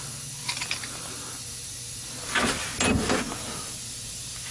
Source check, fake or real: real